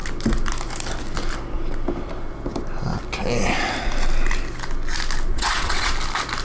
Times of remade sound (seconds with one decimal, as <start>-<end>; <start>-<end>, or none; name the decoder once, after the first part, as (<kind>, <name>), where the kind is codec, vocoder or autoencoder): 5.3-5.9 (vocoder, WaveNeXt)